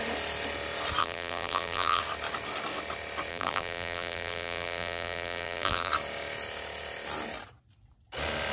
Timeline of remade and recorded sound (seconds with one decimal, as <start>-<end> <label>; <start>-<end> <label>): 0.0-1.0 recorded; 1.0-2.0 remade; 2.0-3.3 recorded; 3.3-5.9 remade; 5.9-8.5 recorded